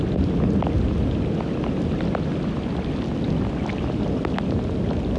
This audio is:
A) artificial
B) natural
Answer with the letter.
B